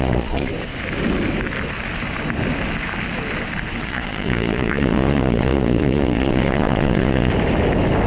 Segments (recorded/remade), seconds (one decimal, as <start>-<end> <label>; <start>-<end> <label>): 0.0-0.5 remade; 0.5-3.8 recorded; 3.8-7.3 remade; 7.3-8.1 recorded